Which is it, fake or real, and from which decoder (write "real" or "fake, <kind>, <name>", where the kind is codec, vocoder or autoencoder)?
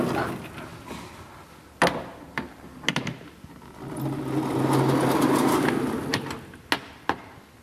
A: real